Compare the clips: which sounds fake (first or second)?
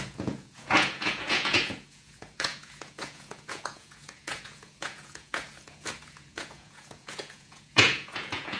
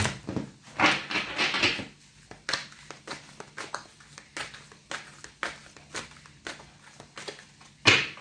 first